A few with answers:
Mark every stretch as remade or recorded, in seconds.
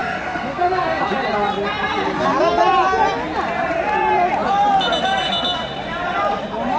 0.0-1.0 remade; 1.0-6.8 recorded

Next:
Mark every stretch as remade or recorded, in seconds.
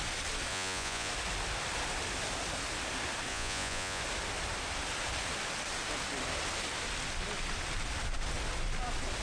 0.0-0.5 recorded; 0.5-1.1 remade; 1.1-3.3 recorded; 3.3-4.0 remade; 4.0-9.2 recorded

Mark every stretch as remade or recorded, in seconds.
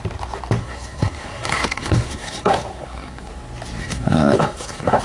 0.0-0.6 recorded; 0.6-3.3 remade; 3.3-3.8 recorded; 3.8-5.0 remade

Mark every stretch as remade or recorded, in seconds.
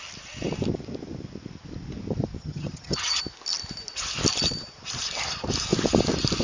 0.0-2.4 recorded; 2.4-3.2 remade; 3.2-6.4 recorded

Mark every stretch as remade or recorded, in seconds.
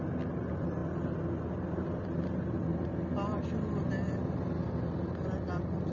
0.0-5.9 recorded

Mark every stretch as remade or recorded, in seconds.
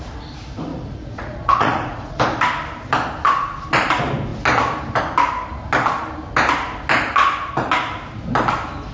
0.0-0.7 recorded; 0.7-2.2 remade; 2.2-8.9 recorded